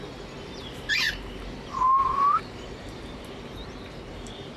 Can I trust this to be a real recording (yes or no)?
yes